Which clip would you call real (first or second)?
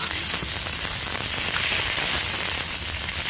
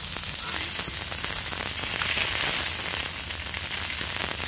second